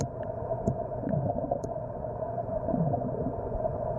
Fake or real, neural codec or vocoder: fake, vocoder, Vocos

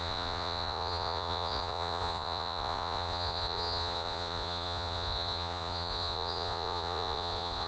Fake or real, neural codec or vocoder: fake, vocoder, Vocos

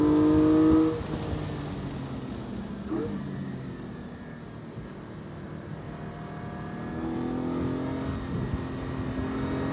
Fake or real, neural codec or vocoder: real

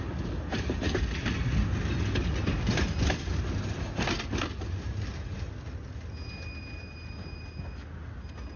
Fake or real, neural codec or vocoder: real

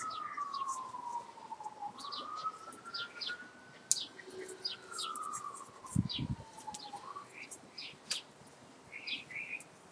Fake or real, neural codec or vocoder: real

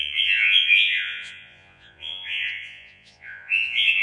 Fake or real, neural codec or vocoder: fake, vocoder, Vocos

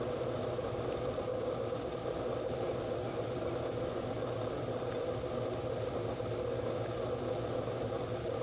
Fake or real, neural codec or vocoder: real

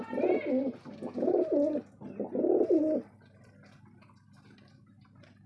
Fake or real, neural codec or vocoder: real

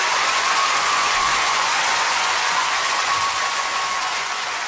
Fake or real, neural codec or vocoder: fake, vocoder, Vocos